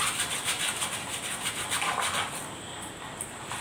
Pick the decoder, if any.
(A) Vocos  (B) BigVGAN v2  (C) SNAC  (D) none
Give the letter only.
D